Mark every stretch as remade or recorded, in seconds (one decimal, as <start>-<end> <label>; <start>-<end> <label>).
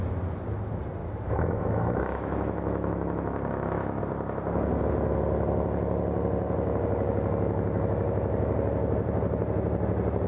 0.0-1.0 recorded; 1.0-4.0 remade; 4.0-10.3 recorded